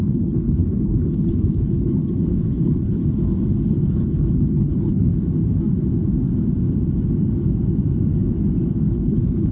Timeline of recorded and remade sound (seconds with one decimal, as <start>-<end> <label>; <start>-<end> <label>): 0.0-3.0 remade; 3.0-3.7 recorded; 3.7-5.1 remade; 5.1-8.9 recorded; 8.9-9.5 remade